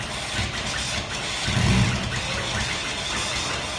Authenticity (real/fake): real